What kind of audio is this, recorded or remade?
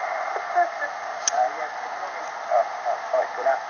recorded